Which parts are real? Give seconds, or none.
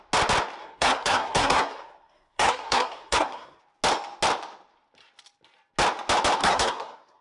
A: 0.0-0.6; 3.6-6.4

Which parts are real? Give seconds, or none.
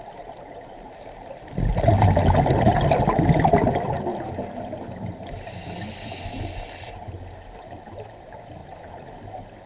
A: 0.0-9.7